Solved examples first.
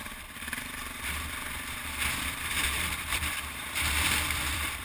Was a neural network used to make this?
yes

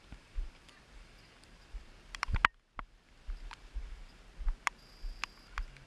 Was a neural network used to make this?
no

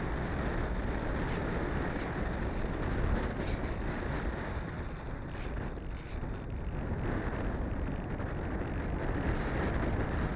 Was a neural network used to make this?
no